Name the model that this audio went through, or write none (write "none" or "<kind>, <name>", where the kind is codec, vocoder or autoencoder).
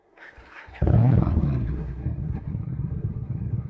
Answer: codec, SNAC